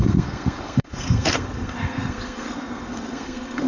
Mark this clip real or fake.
fake